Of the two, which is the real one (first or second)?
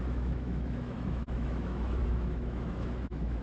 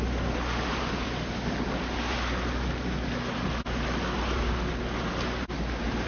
second